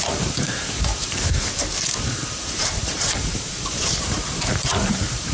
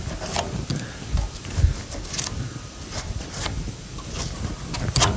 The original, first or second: second